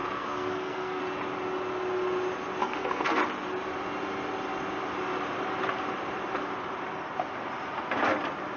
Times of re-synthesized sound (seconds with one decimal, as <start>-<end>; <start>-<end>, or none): 0.0-1.0; 2.6-3.2